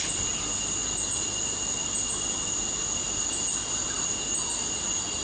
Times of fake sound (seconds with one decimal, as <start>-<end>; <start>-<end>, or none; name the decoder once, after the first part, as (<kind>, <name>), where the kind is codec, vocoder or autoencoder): none